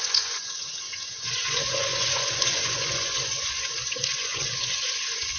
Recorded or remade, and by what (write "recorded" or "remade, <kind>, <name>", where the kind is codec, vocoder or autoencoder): remade, vocoder, Vocos